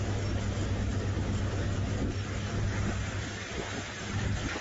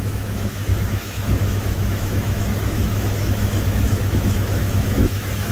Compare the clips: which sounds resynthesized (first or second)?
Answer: second